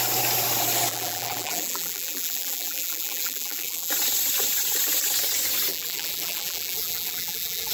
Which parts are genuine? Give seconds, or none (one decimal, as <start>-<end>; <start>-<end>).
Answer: 0.0-0.9; 3.9-5.7